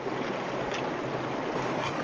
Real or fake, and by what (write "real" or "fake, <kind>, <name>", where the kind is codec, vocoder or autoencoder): real